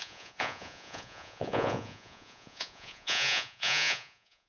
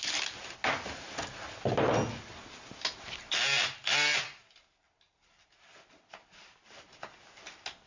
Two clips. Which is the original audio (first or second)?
second